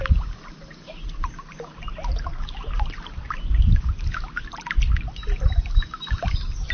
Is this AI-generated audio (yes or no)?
no